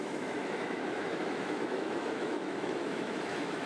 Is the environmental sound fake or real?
fake